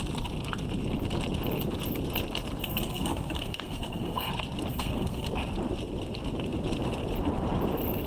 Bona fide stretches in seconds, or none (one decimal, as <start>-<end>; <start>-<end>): 0.0-2.6; 4.3-4.7; 5.3-8.1